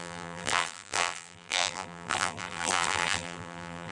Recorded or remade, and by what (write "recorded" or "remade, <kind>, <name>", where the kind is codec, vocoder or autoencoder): remade, vocoder, BigVGAN v2